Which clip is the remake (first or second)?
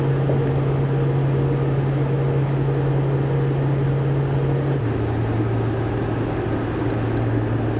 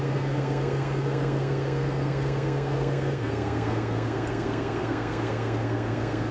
second